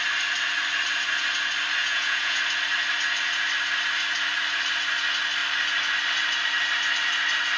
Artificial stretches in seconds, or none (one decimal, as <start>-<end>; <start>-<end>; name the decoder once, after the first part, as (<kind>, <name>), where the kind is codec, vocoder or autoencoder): 1.8-2.4 (vocoder, Vocos)